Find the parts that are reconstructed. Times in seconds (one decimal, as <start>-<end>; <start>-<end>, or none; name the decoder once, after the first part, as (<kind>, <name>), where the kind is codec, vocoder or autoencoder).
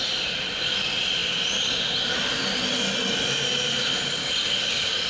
none